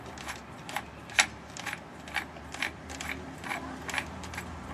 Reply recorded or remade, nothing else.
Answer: recorded